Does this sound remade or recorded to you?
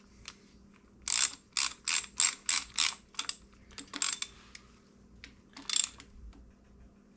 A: recorded